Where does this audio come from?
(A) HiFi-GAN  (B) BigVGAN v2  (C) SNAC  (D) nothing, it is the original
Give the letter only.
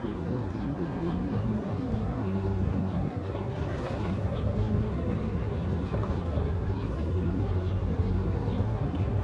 C